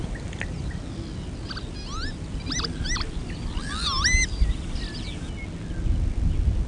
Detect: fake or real real